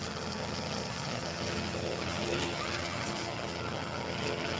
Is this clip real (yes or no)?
no